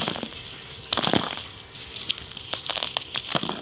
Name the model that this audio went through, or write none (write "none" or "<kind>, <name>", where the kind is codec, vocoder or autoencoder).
none